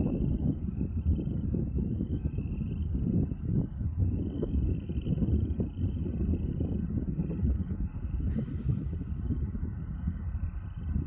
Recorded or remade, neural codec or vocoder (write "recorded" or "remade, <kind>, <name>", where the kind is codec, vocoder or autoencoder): recorded